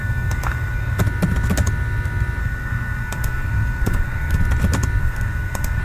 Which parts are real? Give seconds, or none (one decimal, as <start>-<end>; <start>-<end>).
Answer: 1.0-2.4; 4.4-5.0